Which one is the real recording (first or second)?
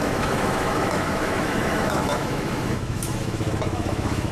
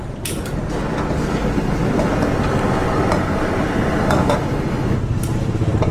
second